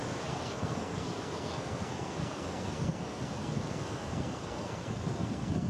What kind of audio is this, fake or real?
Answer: fake